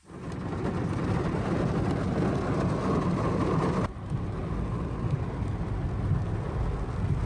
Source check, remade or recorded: recorded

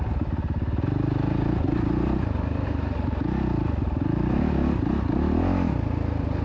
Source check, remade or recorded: recorded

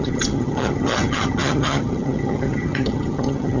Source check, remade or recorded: remade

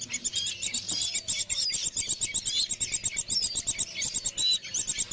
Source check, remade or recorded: recorded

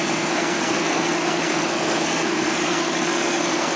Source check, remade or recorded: remade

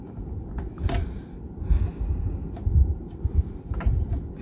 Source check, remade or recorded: recorded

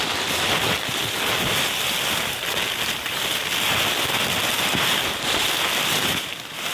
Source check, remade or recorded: recorded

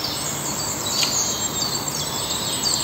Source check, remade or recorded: recorded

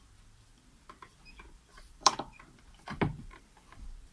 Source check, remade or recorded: remade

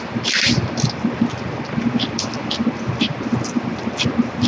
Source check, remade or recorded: remade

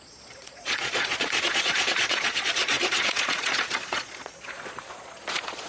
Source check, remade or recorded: remade